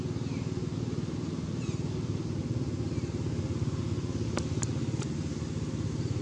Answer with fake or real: real